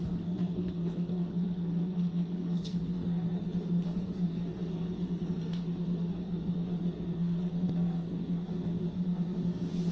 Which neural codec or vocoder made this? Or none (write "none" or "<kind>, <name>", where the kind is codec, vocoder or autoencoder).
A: codec, SNAC